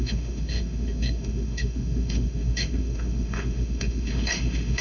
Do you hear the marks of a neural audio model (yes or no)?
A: yes